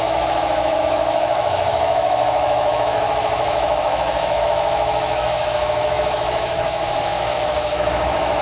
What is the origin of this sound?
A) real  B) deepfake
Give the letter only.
B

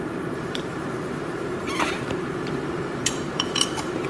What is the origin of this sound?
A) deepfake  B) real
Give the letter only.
A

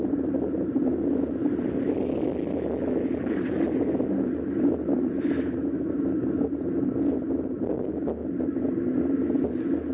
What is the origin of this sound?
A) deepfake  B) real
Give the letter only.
B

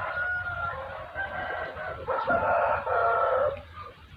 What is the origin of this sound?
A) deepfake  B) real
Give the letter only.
B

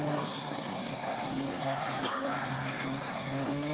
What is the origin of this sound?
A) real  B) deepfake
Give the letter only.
B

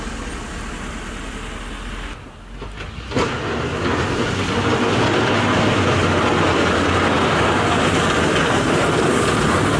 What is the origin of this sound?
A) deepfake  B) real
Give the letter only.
B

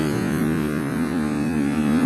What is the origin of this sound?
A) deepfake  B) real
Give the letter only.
A